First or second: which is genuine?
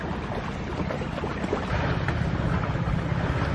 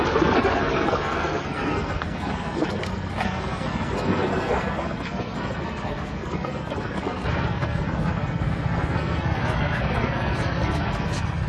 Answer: first